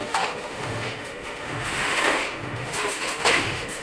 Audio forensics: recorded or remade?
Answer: remade